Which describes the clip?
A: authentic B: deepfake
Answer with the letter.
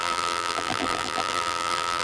B